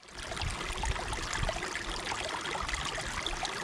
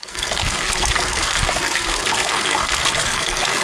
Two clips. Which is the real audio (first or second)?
first